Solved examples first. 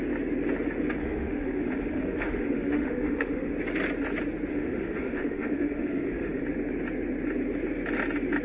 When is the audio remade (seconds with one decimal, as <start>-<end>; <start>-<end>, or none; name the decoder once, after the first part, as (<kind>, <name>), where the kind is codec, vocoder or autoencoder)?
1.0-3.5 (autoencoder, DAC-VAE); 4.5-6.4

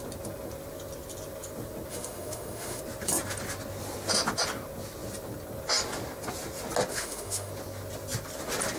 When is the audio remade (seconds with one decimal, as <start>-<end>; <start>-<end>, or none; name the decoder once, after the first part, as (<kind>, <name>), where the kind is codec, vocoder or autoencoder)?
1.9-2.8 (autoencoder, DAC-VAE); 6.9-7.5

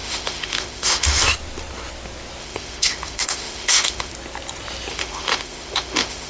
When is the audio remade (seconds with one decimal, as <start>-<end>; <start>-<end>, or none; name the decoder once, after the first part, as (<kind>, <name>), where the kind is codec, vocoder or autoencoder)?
0.0-1.2 (autoencoder, DAC-VAE); 2.4-4.1; 4.9-6.3

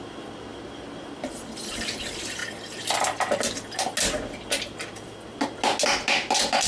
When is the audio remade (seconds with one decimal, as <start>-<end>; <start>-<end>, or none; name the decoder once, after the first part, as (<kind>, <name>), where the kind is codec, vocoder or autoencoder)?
none

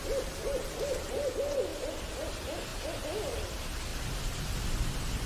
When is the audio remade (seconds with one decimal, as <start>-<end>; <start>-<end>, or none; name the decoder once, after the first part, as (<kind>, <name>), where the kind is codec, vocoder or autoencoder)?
none